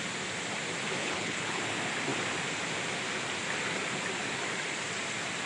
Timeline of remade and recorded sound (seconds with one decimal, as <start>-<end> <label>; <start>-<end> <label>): 0.0-1.0 recorded; 1.0-1.6 remade; 1.6-5.5 recorded